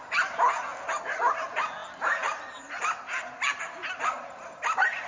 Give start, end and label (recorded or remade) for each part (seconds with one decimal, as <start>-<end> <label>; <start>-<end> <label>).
0.0-5.1 recorded

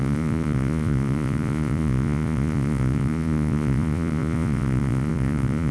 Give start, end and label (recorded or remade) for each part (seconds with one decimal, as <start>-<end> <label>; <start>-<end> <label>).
0.0-5.7 remade

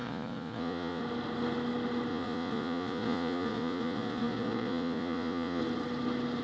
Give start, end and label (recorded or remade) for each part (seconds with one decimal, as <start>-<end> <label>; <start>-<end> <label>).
0.0-1.0 remade; 1.0-2.1 recorded; 2.1-5.6 remade; 5.6-6.4 recorded

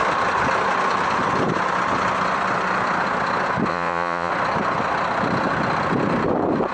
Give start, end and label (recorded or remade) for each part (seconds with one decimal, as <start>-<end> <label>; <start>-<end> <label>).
0.0-3.7 recorded; 3.7-4.3 remade; 4.3-6.7 recorded